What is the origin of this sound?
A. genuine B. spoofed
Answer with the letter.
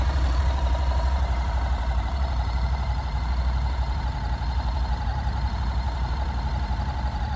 B